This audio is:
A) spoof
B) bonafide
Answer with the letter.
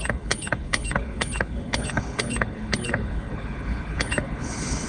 A